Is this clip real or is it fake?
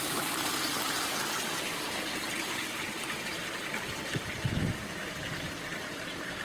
fake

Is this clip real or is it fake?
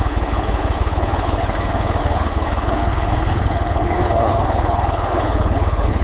fake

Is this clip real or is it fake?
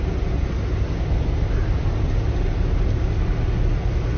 real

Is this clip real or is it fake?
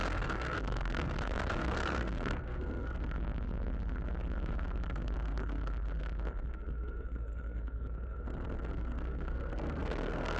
fake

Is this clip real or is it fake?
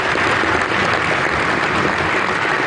real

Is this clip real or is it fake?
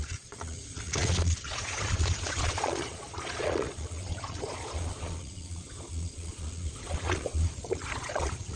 fake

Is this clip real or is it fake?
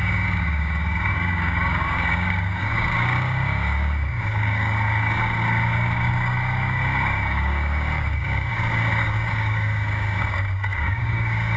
fake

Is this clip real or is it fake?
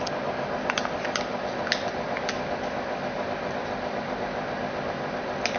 real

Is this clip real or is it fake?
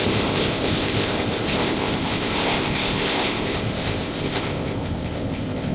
fake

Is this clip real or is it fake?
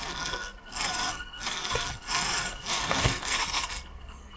fake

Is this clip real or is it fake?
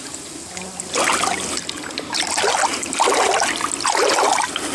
real